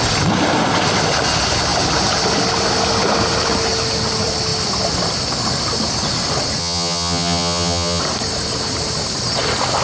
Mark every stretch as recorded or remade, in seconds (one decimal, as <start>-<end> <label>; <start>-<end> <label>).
0.0-6.6 recorded; 6.6-8.0 remade; 8.0-9.8 recorded